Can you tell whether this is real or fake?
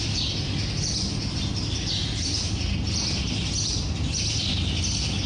real